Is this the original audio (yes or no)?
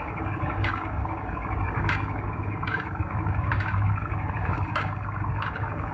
no